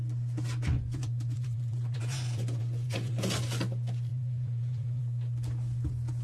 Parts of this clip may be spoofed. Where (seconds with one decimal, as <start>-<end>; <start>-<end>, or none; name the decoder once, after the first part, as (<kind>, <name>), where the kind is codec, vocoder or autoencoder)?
0.7-3.3 (vocoder, Vocos); 4.1-5.0